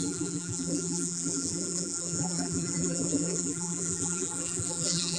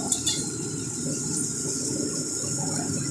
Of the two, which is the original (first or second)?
second